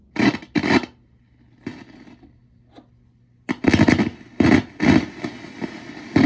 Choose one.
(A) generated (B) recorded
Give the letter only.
B